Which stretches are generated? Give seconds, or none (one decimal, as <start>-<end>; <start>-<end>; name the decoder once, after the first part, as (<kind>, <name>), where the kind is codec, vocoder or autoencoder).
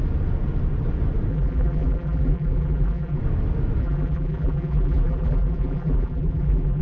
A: 1.3-3.2 (vocoder, BigVGAN v2); 3.8-6.8